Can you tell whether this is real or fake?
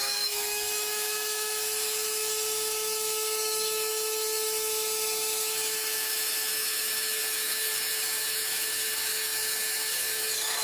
fake